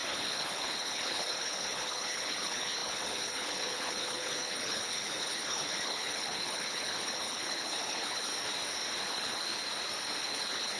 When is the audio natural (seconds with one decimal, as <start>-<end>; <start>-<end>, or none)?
8.3-9.0; 9.5-10.2